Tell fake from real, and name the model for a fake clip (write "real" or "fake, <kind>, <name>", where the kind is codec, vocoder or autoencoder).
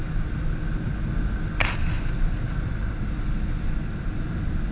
real